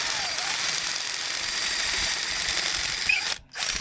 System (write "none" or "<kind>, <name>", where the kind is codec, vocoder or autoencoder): none